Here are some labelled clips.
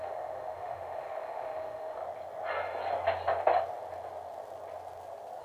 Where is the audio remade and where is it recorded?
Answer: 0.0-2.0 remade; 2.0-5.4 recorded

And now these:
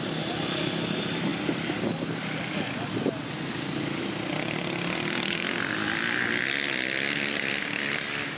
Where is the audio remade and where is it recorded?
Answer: 0.0-8.4 recorded

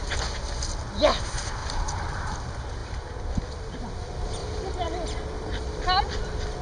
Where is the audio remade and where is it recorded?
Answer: 0.0-1.6 recorded; 1.6-2.3 remade; 2.3-2.8 recorded; 2.8-3.9 remade; 3.9-4.4 recorded; 4.4-5.8 remade; 5.8-6.6 recorded